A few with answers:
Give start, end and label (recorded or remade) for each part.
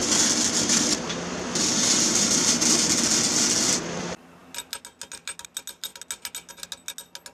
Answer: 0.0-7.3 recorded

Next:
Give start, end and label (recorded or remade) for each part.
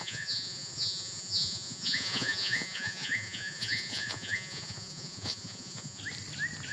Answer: 0.0-6.0 remade; 6.0-6.7 recorded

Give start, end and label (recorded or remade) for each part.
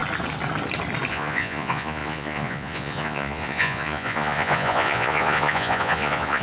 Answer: 0.0-1.1 recorded; 1.1-6.4 remade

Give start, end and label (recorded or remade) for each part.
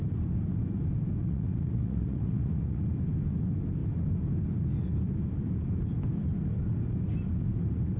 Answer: 0.0-1.2 recorded; 1.2-2.8 remade; 2.8-8.0 recorded